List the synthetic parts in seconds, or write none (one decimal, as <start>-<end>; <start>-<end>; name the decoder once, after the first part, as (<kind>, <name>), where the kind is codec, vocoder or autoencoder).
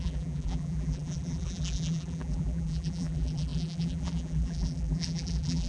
0.0-5.7 (vocoder, BigVGAN v2)